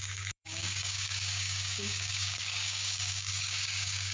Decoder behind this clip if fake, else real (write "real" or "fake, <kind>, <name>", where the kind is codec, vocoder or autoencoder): fake, codec, DAC